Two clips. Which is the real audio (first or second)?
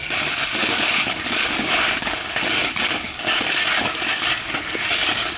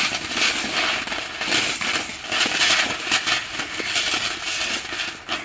second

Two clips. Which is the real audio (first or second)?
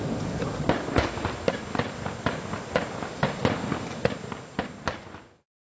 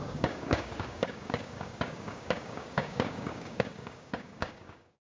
first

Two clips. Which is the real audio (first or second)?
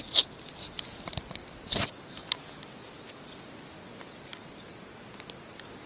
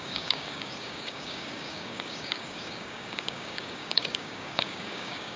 first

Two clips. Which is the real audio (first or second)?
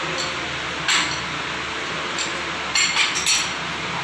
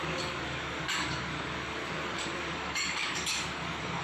first